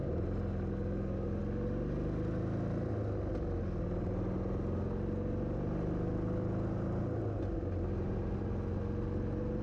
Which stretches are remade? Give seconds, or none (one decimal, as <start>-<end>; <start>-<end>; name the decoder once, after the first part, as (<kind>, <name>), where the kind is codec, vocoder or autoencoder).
none